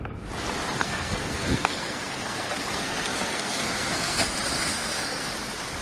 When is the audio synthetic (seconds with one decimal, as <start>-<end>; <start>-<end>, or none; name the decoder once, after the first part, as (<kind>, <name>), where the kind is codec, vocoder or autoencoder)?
0.8-4.3 (codec, SNAC); 4.7-5.3